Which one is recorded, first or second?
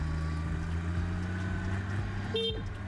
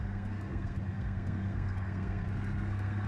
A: first